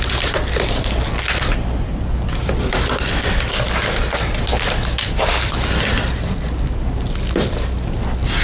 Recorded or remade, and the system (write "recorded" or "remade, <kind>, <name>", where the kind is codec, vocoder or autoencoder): recorded